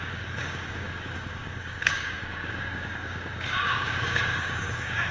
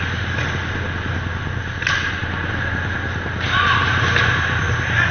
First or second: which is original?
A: second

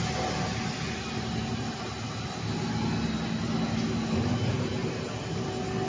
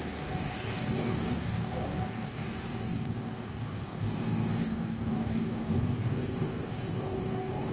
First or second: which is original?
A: first